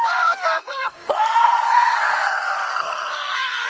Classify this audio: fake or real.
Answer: fake